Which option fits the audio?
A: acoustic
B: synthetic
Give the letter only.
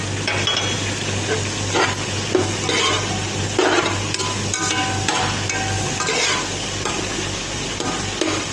A